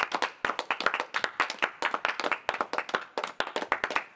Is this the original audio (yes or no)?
yes